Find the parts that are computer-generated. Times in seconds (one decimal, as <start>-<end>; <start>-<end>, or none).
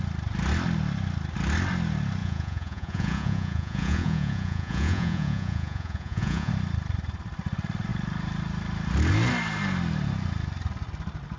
2.2-6.5